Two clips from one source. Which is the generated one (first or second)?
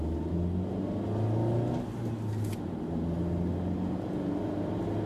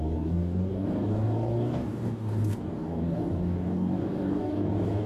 second